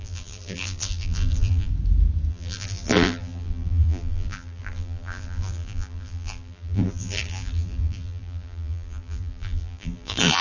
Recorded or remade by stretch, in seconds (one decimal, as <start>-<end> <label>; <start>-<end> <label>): 0.0-1.7 remade; 1.7-2.3 recorded; 2.3-10.4 remade